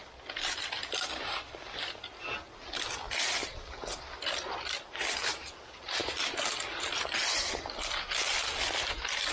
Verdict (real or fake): real